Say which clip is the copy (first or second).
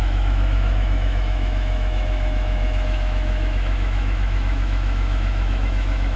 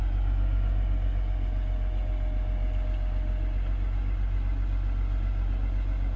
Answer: first